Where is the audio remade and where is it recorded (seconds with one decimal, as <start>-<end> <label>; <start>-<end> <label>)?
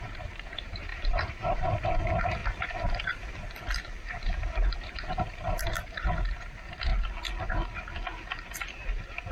0.0-2.4 remade; 2.4-4.8 recorded; 4.8-6.9 remade; 6.9-9.3 recorded